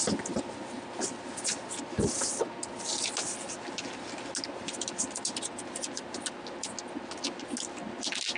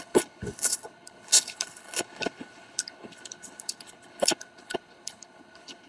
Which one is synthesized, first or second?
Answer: second